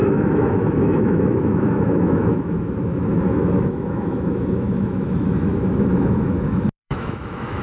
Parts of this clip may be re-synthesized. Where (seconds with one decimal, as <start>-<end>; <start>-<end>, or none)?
0.0-7.6